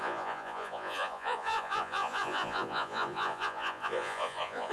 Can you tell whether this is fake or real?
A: fake